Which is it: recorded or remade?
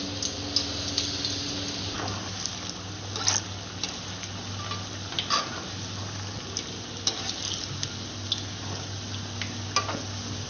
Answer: recorded